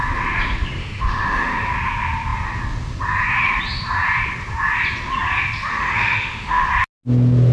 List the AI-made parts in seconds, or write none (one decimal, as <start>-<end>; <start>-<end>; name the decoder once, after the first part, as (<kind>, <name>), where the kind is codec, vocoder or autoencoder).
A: 0.8-1.7 (autoencoder, DAC-VAE); 5.7-6.7